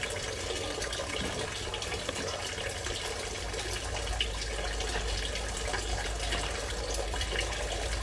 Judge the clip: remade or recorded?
recorded